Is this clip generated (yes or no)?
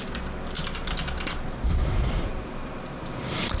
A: no